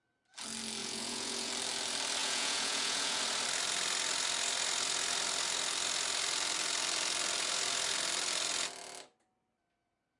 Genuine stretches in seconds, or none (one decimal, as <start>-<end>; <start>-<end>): 0.0-0.8; 1.5-2.2; 3.2-10.2

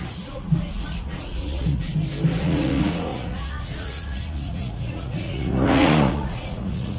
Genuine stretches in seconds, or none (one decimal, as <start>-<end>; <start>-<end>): 1.9-2.4

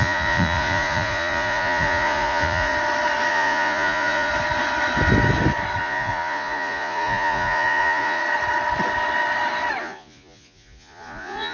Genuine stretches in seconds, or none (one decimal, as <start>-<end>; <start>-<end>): 2.7-3.3; 4.3-5.8; 8.2-9.8

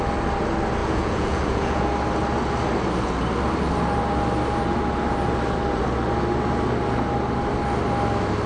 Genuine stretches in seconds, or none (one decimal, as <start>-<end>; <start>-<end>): 0.0-0.8; 1.9-8.5

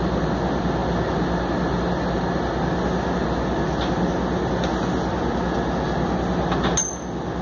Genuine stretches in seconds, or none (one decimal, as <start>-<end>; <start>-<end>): 0.0-7.4

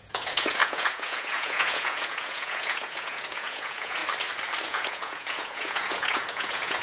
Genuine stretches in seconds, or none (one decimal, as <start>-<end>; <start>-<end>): 4.0-4.6

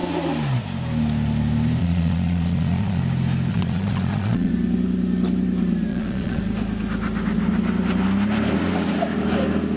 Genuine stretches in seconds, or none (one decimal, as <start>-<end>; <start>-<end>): 0.0-1.8; 3.0-3.5; 4.5-5.9; 6.4-9.8

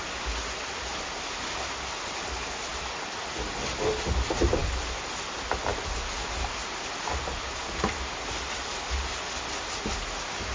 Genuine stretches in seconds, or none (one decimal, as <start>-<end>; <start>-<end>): 0.0-10.5